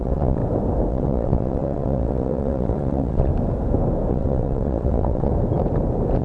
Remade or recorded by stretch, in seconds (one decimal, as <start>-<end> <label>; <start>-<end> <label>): 0.0-0.4 remade; 0.4-0.9 recorded; 0.9-3.3 remade; 3.3-4.1 recorded; 4.1-5.3 remade; 5.3-6.2 recorded